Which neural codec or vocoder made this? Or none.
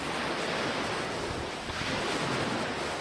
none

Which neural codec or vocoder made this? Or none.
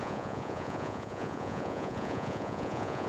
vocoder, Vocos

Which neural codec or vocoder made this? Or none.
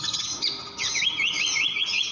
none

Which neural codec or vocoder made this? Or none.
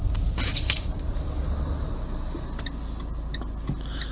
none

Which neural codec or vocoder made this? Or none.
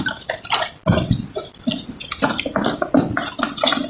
none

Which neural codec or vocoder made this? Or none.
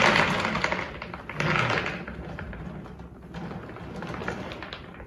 none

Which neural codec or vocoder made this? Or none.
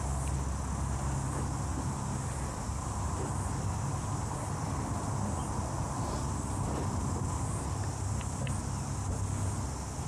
none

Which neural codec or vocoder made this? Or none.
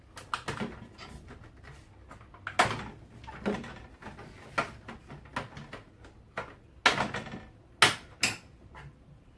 none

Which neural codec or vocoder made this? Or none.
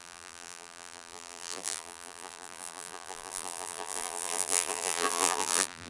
vocoder, BigVGAN v2